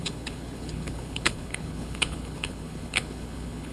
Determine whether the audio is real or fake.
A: fake